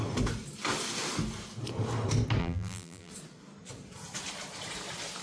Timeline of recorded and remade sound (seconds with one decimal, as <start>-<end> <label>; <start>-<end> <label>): 0.0-2.4 recorded; 2.4-3.1 remade; 3.1-5.2 recorded